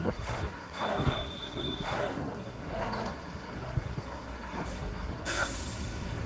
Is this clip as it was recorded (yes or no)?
no